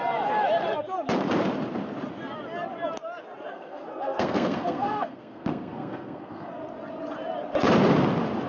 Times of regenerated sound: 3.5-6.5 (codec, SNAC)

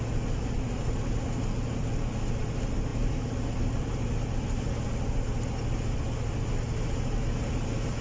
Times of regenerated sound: none